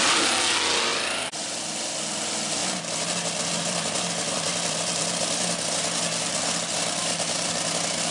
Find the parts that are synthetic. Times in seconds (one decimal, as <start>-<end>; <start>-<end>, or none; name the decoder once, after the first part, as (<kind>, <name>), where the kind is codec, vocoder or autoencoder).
0.9-2.0 (vocoder, BigVGAN v2); 2.6-7.5